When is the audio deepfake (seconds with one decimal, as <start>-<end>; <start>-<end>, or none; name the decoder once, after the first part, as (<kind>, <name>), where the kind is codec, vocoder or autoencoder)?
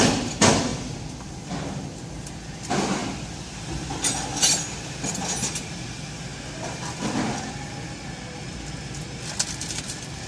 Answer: none